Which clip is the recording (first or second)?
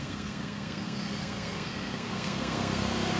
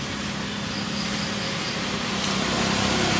second